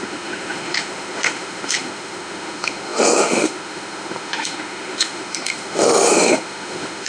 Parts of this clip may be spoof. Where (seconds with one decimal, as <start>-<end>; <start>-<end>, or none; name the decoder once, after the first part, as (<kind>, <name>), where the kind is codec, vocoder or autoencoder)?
0.0-7.1 (autoencoder, DAC-VAE)